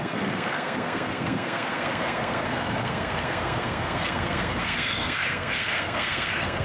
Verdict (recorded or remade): remade